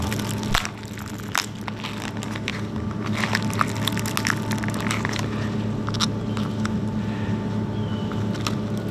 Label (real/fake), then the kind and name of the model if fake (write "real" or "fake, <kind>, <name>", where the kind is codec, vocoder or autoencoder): real